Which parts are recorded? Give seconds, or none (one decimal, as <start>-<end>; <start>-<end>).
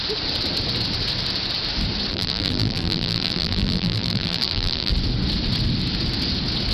0.0-2.1; 4.9-6.7